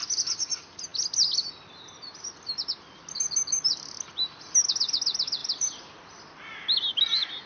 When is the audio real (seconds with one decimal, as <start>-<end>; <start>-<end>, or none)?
0.0-7.5